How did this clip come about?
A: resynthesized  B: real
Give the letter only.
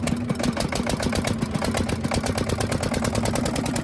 B